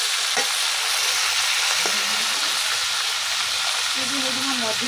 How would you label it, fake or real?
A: real